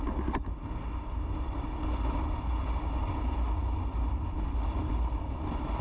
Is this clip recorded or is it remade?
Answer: recorded